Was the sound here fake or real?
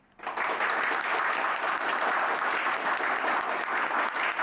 real